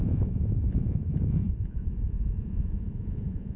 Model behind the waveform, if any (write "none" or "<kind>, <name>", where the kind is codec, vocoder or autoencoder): vocoder, Vocos